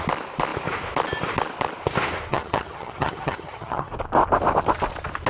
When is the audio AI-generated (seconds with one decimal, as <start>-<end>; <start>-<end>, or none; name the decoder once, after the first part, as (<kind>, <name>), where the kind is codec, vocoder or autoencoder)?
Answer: 2.3-3.9 (vocoder, HiFi-GAN)